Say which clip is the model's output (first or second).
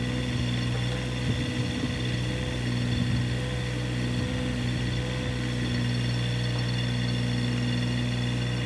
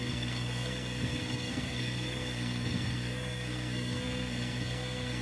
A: second